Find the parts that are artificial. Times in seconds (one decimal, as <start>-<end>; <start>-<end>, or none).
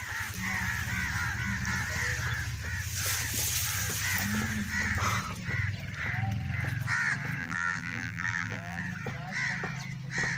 7.4-8.8